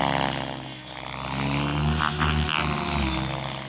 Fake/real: real